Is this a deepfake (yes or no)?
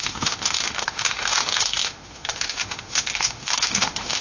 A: yes